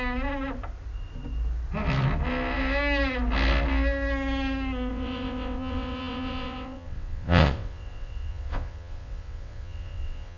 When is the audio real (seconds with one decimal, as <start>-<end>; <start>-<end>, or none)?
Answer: 0.0-4.9